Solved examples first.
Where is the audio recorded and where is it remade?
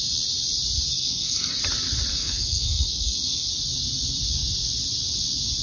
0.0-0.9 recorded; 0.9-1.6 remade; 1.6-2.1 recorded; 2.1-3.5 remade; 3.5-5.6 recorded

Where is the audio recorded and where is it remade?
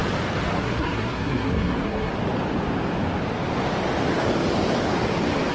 0.0-0.5 recorded; 0.5-2.1 remade; 2.1-5.5 recorded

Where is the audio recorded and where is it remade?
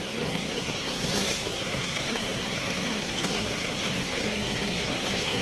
0.0-5.4 remade